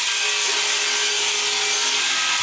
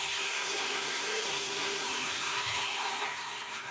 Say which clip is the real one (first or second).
first